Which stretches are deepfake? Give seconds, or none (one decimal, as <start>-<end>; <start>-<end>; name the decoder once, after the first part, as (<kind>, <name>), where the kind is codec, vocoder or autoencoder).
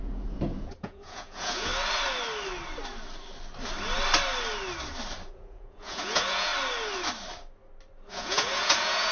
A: 0.0-1.7 (vocoder, Vocos); 5.3-6.5; 8.1-9.1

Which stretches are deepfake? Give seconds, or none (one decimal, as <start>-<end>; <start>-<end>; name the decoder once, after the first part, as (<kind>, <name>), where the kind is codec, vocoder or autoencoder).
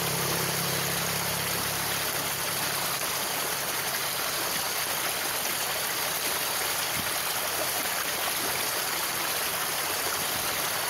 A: none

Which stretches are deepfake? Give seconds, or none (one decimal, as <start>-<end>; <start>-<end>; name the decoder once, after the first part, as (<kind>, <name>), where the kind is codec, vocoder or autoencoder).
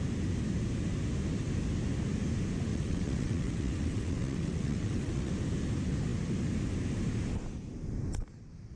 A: 2.7-5.3 (vocoder, WaveNeXt)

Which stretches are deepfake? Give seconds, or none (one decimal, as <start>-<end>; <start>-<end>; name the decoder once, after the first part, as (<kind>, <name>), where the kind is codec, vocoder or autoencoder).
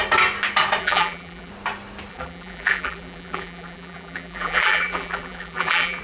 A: 0.8-1.5 (vocoder, BigVGAN v2); 2.1-6.0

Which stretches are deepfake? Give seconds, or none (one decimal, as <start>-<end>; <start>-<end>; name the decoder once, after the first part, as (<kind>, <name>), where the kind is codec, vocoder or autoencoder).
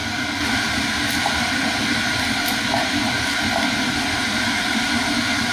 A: none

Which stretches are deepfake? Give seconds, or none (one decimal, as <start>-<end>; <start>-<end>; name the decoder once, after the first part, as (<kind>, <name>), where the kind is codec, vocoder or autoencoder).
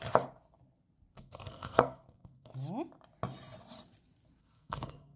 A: 1.2-2.5 (codec, SNAC); 4.4-5.2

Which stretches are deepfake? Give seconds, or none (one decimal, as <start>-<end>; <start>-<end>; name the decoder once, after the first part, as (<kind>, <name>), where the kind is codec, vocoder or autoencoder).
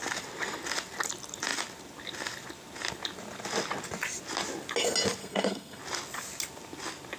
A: 5.2-5.8 (codec, SNAC)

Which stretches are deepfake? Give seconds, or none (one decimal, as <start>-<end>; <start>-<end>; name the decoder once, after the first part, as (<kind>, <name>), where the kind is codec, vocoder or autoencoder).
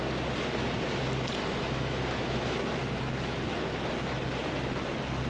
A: 1.4-4.2 (autoencoder, DAC-VAE)